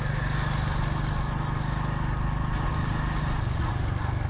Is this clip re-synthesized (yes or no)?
no